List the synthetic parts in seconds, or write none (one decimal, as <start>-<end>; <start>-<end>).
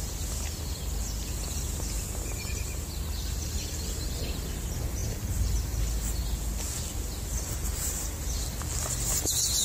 none